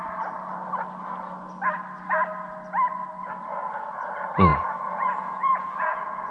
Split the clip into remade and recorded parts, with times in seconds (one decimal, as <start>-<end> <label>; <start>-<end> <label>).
0.0-4.5 recorded; 4.5-6.3 remade